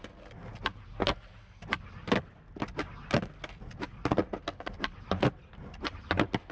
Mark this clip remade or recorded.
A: recorded